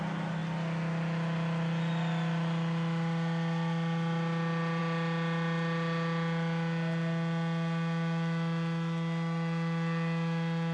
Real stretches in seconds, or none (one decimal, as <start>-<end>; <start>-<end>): 0.0-10.7